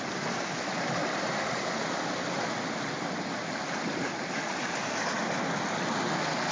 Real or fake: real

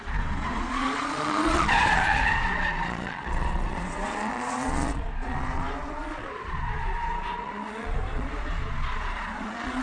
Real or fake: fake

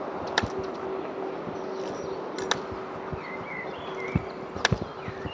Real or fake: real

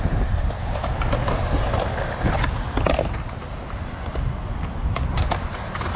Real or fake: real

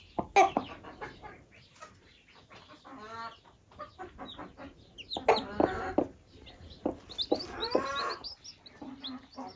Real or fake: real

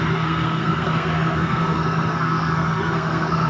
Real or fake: fake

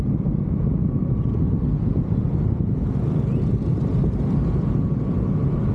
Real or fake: real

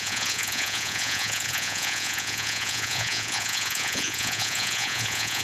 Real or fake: fake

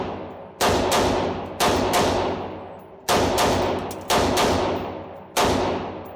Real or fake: real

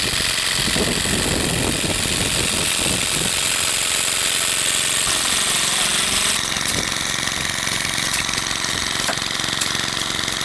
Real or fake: real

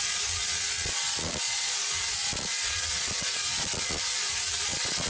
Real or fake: fake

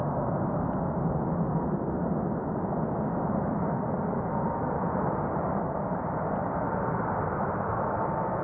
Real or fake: real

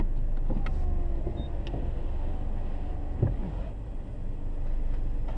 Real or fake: real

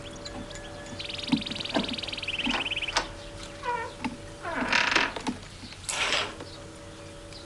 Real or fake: real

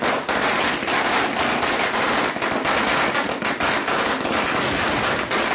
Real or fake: real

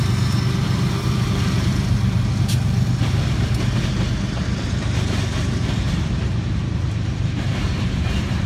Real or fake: fake